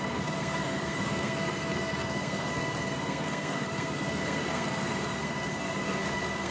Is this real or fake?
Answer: fake